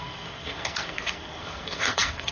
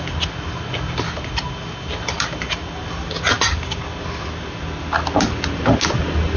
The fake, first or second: first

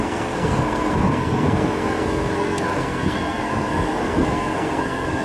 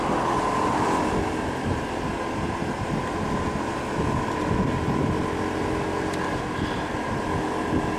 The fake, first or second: first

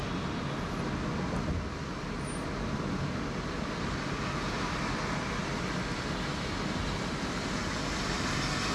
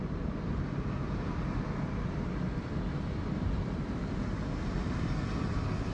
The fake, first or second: second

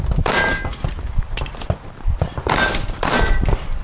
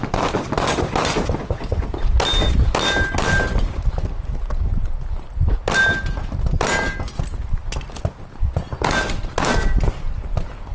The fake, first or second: first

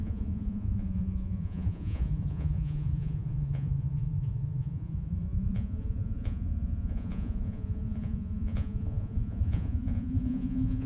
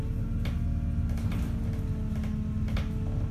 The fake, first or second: first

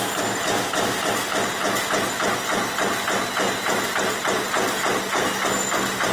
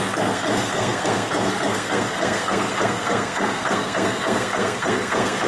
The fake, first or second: second